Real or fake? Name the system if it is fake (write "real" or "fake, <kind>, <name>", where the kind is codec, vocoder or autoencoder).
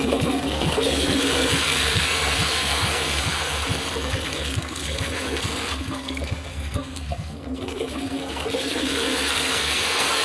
fake, codec, SNAC